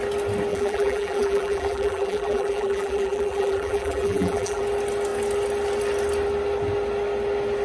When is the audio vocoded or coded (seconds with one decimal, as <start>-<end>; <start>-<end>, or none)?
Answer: 0.5-4.6